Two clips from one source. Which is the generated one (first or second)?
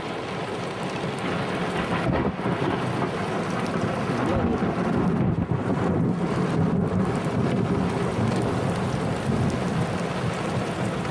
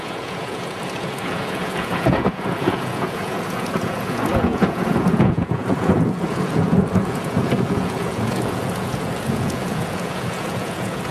second